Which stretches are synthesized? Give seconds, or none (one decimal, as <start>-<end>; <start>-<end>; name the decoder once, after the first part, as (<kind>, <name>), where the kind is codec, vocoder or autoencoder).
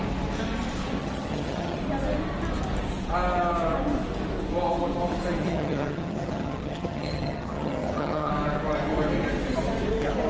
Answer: 1.0-1.8 (vocoder, HiFi-GAN); 5.4-8.3